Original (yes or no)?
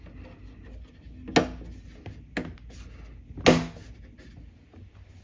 yes